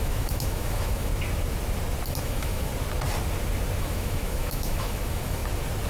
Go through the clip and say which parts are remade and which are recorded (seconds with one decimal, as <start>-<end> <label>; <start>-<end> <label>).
0.0-1.1 remade; 1.1-2.2 recorded; 2.2-2.7 remade; 2.7-3.8 recorded; 3.8-5.4 remade; 5.4-5.9 recorded